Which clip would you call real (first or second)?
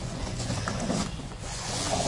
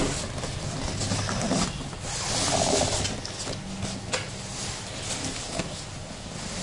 second